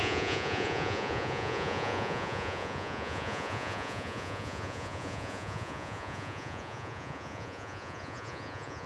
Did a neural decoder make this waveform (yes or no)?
yes